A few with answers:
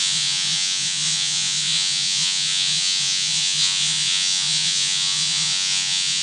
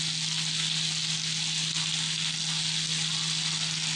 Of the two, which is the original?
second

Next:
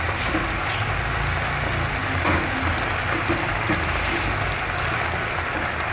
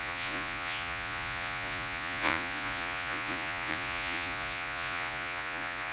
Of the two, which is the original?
first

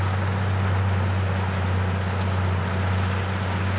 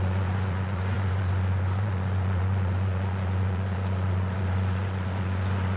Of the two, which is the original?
first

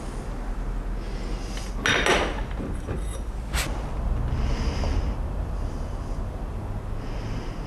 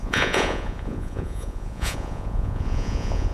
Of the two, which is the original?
first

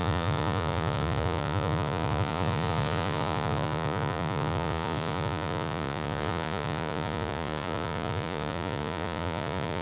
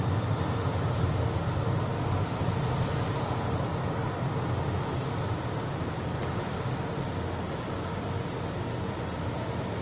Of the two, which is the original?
second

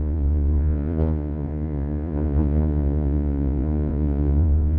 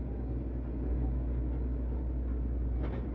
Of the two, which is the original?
second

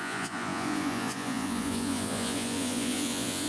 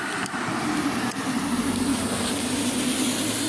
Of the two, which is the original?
second